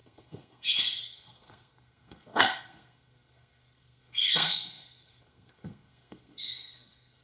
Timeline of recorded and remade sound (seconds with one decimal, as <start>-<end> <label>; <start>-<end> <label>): 0.0-7.2 remade